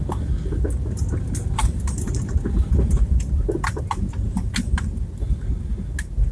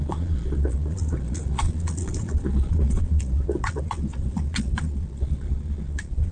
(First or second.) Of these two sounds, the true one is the first